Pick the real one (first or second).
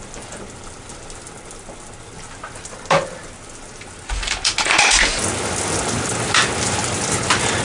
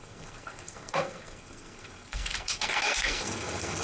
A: first